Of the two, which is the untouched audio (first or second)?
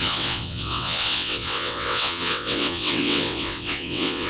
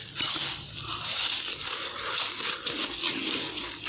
second